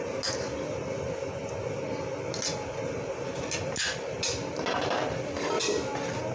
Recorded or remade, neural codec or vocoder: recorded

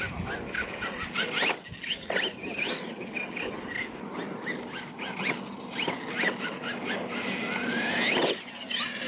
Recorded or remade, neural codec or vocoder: recorded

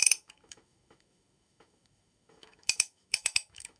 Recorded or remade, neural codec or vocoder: remade, autoencoder, DAC-VAE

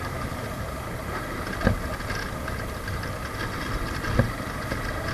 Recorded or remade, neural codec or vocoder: recorded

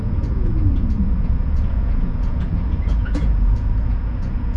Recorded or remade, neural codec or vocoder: remade, vocoder, Vocos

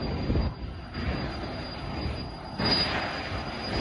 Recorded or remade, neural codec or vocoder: recorded